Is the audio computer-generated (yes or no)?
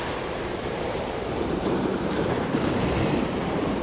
yes